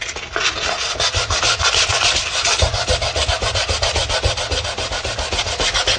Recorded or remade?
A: recorded